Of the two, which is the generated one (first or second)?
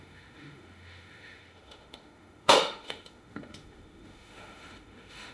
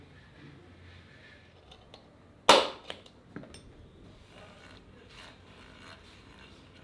first